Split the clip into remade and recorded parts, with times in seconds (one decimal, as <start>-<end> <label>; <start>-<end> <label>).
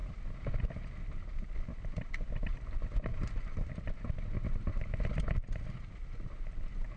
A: 0.0-3.1 recorded; 3.1-3.7 remade; 3.7-7.0 recorded